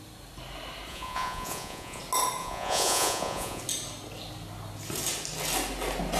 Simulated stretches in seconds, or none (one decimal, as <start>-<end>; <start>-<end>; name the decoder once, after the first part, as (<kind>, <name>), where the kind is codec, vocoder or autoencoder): 0.9-2.0 (vocoder, Vocos); 2.4-3.6